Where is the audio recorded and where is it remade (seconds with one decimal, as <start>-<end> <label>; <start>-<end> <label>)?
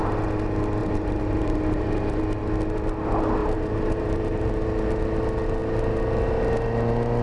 0.0-0.8 recorded; 0.8-2.2 remade; 2.2-3.4 recorded; 3.4-4.5 remade; 4.5-7.2 recorded